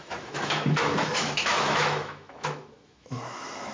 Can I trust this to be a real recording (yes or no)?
no